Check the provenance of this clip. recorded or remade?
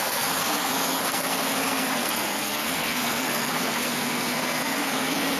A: remade